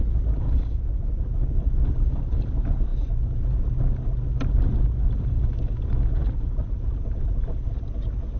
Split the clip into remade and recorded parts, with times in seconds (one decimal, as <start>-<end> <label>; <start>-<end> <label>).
0.0-8.4 recorded